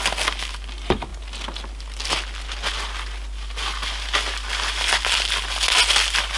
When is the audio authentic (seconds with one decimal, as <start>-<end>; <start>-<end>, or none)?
0.0-6.4